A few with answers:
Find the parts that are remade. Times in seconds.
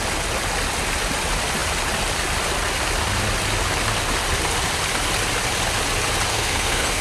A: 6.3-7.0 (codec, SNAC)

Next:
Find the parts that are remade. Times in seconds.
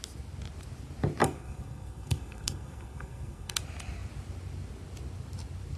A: 1.2-3.6 (codec, SNAC)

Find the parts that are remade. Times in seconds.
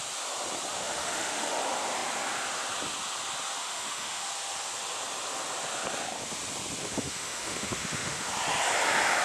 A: 0.7-1.6 (autoencoder, DAC-VAE); 3.6-4.3; 6.8-8.3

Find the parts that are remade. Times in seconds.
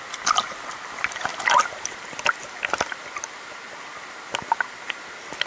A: none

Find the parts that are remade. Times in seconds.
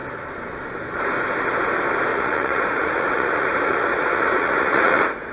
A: 2.1-5.3 (vocoder, Vocos)